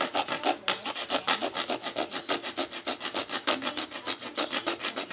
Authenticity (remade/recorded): recorded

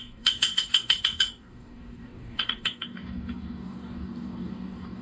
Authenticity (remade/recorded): remade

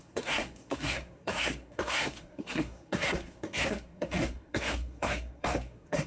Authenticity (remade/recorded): remade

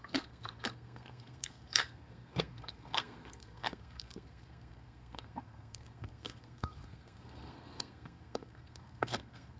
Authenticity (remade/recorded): remade